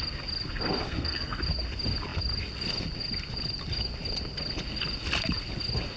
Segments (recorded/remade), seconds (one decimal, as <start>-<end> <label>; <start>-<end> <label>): 0.0-0.8 recorded; 0.8-1.4 remade; 1.4-6.0 recorded